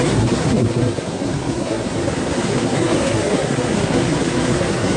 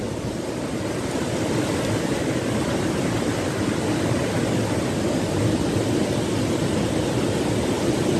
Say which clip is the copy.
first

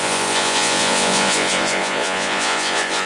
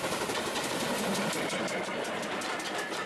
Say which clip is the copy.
first